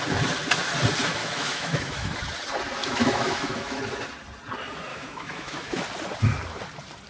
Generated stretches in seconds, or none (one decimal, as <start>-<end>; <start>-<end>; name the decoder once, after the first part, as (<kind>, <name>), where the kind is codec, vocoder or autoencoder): 1.2-2.2 (autoencoder, DAC-VAE); 2.8-3.8; 4.9-5.8